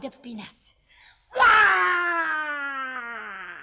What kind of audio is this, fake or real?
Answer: real